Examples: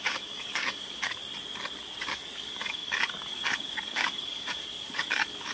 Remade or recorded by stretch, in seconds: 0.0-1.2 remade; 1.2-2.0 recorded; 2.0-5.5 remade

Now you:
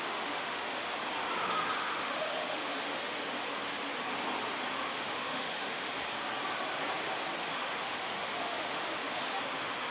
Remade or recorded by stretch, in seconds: 0.0-0.9 remade; 0.9-1.8 recorded; 1.8-3.4 remade; 3.4-4.7 recorded; 4.7-5.9 remade; 5.9-7.4 recorded; 7.4-9.9 remade